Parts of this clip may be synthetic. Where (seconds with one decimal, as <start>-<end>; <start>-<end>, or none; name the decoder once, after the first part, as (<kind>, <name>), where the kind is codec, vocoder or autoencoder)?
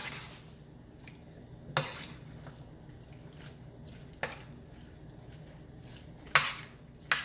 none